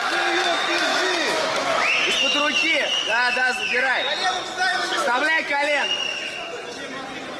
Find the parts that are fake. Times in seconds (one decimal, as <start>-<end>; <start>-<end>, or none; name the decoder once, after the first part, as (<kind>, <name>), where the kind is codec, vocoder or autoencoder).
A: 0.9-1.8 (autoencoder, DAC-VAE); 4.7-5.9